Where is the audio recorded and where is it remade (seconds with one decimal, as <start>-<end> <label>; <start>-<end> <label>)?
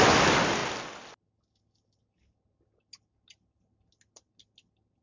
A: 0.0-5.0 recorded